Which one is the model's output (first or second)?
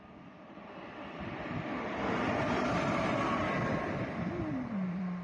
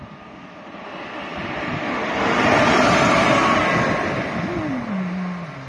first